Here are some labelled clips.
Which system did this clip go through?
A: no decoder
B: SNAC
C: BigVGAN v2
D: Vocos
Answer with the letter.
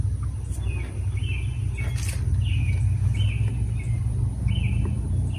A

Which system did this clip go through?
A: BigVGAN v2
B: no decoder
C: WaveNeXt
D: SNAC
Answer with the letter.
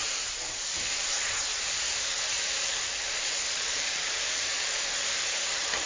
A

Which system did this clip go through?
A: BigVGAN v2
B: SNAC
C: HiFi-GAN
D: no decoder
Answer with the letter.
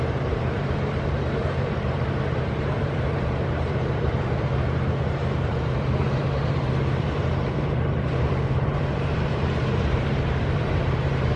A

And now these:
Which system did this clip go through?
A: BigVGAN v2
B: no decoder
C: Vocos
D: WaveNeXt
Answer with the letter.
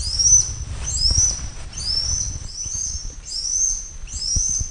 B